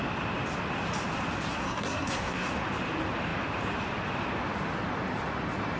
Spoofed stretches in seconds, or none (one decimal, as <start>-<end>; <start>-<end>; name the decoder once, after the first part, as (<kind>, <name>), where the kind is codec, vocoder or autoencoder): 1.5-2.5 (codec, SNAC)